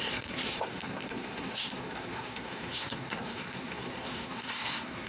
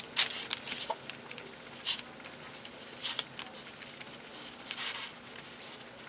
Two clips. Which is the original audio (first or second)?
second